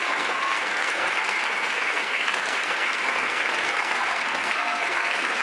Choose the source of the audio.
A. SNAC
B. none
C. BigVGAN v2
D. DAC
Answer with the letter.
A